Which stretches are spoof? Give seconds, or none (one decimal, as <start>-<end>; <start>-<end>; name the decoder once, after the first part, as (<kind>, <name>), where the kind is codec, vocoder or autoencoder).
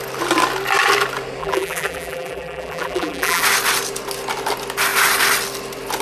1.4-3.4 (vocoder, BigVGAN v2)